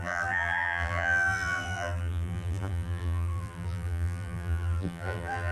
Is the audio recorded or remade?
remade